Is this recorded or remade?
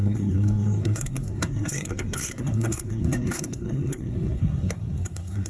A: remade